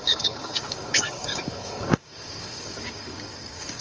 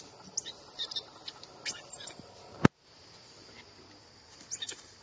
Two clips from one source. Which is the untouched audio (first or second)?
second